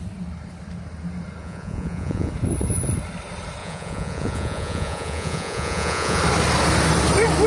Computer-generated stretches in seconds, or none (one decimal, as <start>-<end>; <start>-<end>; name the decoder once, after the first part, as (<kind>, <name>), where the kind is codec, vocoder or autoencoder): 1.4-2.3 (vocoder, Vocos); 3.6-6.2